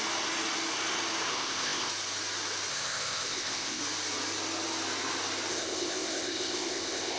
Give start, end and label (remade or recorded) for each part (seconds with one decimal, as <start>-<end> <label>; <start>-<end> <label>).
0.0-1.3 recorded; 1.3-1.9 remade; 1.9-2.7 recorded; 2.7-3.8 remade; 3.8-5.5 recorded; 5.5-7.2 remade